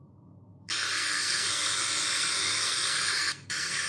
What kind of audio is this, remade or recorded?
remade